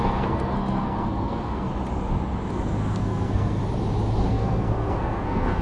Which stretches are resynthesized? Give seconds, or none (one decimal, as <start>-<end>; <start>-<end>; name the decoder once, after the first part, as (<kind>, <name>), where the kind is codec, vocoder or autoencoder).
0.0-1.7 (codec, SNAC); 2.5-3.6; 4.3-5.6